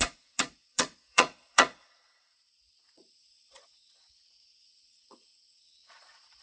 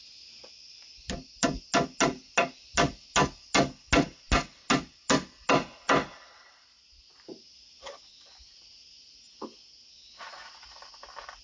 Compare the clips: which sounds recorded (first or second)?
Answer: second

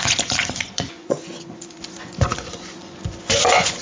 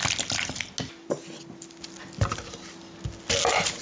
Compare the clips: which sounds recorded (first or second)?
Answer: second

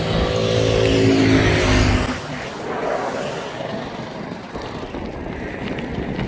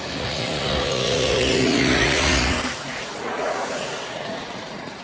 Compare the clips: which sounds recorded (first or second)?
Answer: first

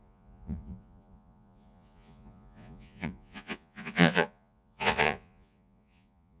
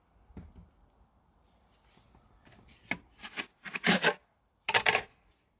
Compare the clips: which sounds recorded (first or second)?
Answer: second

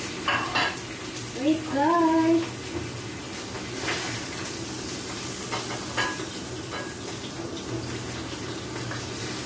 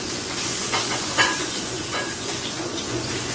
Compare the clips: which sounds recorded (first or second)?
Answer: first